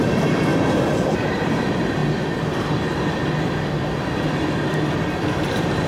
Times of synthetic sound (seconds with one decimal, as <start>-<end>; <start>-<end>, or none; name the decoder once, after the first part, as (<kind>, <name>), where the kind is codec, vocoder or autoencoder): 0.0-0.5 (vocoder, BigVGAN v2); 1.0-2.0; 5.5-5.9